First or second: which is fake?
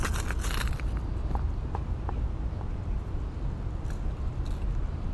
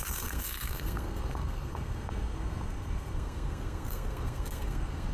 second